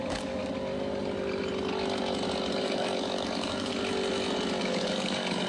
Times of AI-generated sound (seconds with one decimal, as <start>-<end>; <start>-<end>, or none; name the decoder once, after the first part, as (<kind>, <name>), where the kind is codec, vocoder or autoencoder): 0.0-0.4 (codec, DAC); 2.6-3.7; 4.6-5.5